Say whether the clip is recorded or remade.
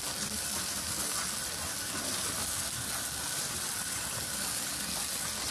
recorded